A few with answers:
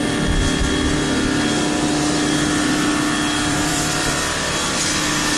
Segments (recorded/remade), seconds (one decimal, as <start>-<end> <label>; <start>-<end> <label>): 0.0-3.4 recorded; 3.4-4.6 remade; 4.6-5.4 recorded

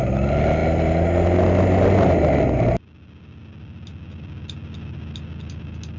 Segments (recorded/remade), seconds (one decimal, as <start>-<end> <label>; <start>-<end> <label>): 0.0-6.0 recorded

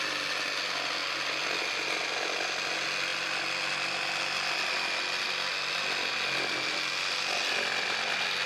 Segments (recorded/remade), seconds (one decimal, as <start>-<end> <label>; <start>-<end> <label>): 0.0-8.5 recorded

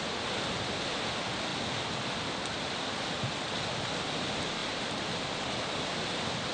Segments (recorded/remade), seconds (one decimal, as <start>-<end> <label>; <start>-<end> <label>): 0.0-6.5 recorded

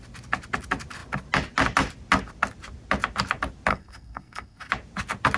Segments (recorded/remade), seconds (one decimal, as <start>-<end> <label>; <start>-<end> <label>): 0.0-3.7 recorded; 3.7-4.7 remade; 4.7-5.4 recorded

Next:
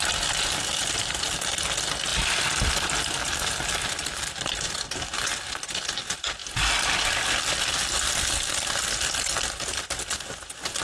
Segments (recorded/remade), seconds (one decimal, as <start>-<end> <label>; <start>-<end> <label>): 0.0-10.8 recorded

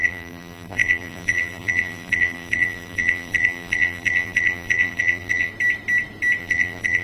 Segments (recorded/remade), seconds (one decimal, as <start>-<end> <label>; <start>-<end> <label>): 0.0-5.5 remade; 5.5-6.4 recorded; 6.4-7.0 remade

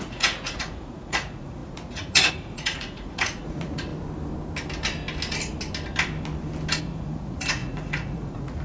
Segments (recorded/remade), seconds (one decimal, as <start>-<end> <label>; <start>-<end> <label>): 0.0-3.9 remade; 3.9-6.8 recorded; 6.8-8.6 remade